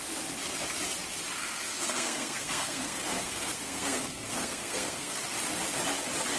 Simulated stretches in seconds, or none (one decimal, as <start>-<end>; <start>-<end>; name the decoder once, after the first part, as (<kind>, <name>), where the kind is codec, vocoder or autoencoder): 1.4-5.2 (codec, SNAC)